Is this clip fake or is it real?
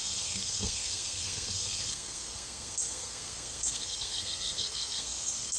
fake